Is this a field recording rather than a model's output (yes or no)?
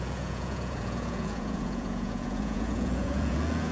no